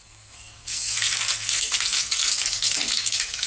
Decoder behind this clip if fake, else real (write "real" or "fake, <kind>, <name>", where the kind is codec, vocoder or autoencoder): fake, codec, SNAC